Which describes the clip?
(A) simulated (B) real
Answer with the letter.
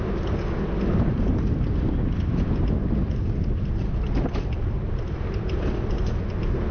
B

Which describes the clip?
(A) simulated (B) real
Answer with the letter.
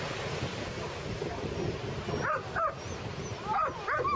B